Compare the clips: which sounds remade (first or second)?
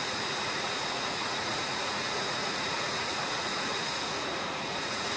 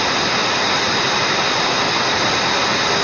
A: first